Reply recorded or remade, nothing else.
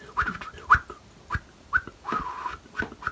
recorded